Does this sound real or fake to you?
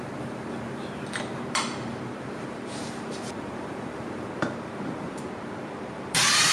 fake